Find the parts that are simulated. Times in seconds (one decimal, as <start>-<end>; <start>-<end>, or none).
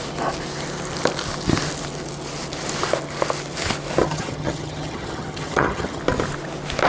4.0-6.0